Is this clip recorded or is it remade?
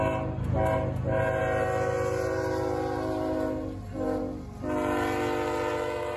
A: recorded